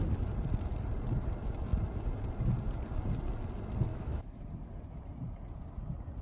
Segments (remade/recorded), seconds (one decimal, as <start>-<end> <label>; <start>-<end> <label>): 0.0-3.9 recorded; 3.9-4.4 remade; 4.4-6.2 recorded